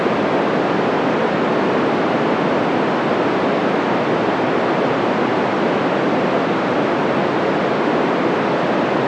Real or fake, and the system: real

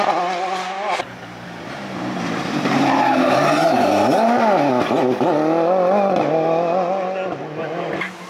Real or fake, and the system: real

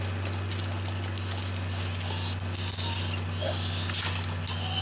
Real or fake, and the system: real